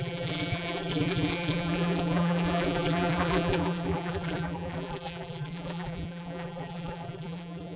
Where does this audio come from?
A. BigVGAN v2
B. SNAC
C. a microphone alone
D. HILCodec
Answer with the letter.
A